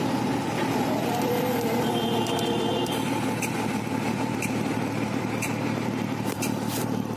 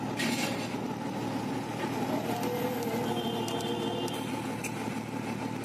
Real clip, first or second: second